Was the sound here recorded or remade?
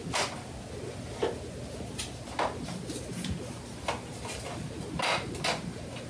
recorded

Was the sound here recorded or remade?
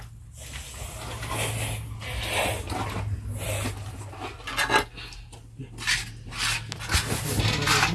recorded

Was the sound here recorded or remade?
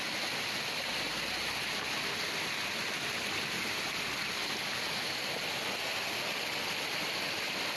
recorded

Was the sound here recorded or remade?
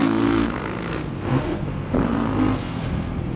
remade